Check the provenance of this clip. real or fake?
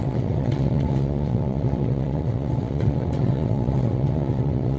fake